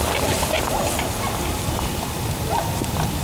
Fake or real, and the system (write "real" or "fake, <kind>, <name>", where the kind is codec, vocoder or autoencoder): real